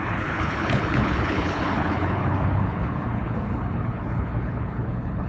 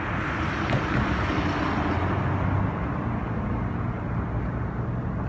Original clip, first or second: second